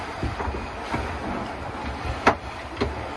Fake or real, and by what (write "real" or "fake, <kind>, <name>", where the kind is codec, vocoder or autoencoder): real